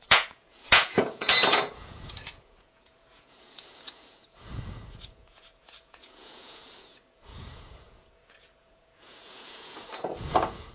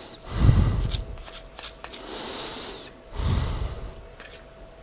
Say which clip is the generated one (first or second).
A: first